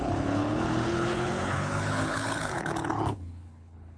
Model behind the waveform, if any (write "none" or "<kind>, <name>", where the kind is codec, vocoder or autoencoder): codec, HILCodec